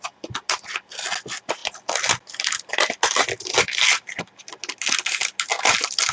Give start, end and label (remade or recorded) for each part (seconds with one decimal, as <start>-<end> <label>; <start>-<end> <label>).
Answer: 0.0-6.1 recorded